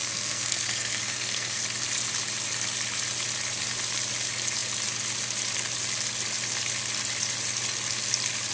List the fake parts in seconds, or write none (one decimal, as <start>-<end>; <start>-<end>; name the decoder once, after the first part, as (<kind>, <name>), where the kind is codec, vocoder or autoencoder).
0.0-1.6 (codec, SNAC)